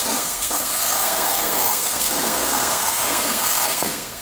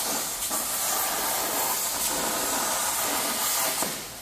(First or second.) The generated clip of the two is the first